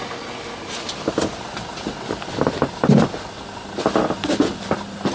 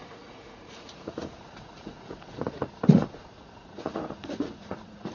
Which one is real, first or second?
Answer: first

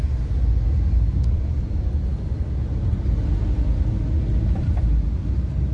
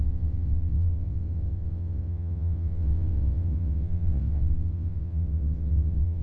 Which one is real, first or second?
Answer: first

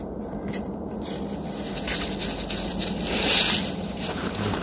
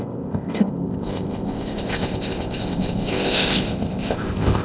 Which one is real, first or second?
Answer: first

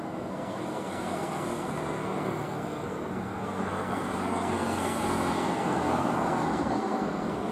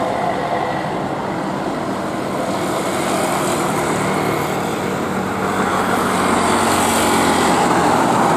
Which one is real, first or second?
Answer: second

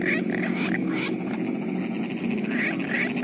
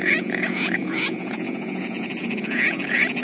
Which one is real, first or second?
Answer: first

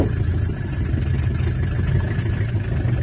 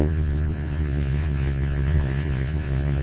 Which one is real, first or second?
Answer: first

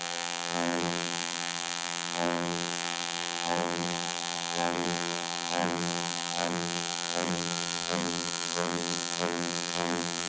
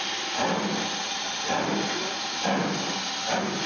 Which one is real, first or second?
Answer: second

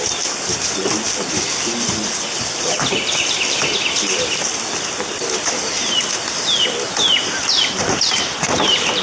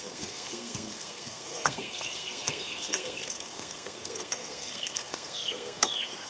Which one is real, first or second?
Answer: first